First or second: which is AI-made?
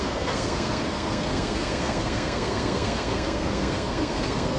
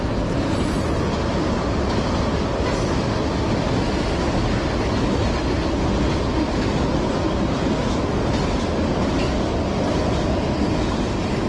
first